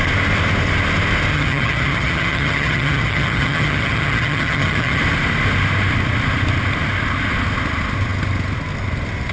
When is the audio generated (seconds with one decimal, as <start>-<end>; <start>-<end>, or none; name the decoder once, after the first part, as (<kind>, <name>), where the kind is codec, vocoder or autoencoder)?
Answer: 1.3-5.0 (vocoder, HiFi-GAN)